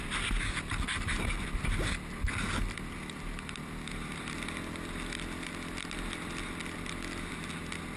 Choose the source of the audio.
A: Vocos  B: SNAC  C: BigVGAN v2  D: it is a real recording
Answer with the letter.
D